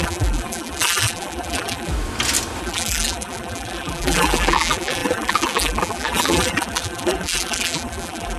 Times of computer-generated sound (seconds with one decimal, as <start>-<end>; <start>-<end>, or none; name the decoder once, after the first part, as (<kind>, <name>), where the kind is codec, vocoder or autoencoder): 0.0-1.9 (vocoder, BigVGAN v2); 2.6-8.4